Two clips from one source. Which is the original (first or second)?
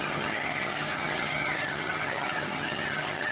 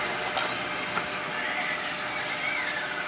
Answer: second